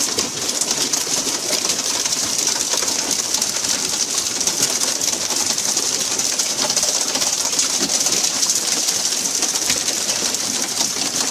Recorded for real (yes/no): yes